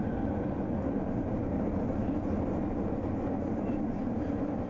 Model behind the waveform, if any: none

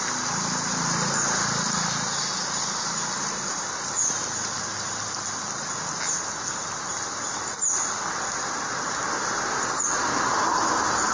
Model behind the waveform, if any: none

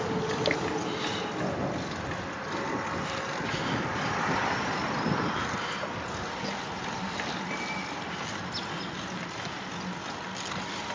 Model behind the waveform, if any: none